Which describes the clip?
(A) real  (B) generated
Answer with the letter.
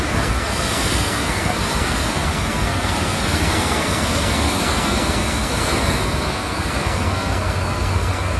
B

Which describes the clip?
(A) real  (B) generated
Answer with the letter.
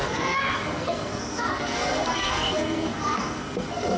B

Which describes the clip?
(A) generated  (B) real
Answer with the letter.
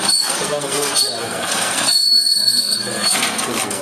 A